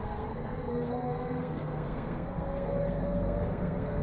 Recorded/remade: remade